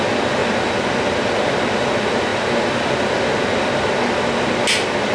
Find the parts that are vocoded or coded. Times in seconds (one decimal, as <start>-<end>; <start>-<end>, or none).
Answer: none